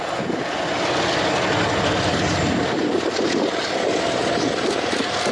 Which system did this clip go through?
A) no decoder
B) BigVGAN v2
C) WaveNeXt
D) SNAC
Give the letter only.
A